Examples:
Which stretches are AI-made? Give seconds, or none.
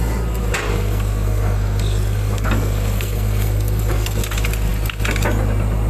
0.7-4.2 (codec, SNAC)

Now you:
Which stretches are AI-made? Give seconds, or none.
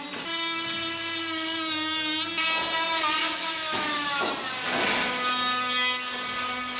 3.2-4.3 (autoencoder, DAC-VAE)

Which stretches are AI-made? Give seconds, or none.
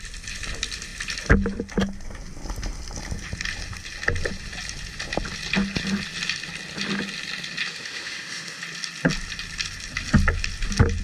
7.7-8.6 (autoencoder, DAC-VAE)